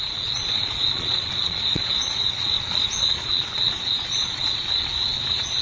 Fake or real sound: fake